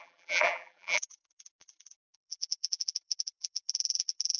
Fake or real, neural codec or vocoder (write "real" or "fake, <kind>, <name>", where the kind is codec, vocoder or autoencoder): fake, vocoder, BigVGAN v2